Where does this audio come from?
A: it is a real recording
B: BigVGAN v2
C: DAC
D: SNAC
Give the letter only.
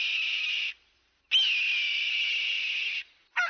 A